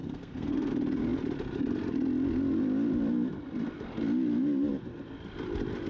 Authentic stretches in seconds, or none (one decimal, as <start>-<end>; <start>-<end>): 0.7-5.9